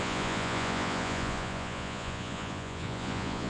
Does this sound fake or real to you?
fake